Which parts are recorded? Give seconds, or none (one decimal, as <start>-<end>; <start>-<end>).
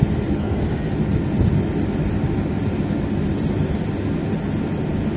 0.0-0.4; 0.9-5.2